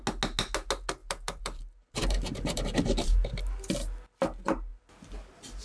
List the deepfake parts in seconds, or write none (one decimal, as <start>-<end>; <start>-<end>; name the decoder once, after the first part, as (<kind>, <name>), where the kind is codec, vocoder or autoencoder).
1.0-3.4 (vocoder, BigVGAN v2)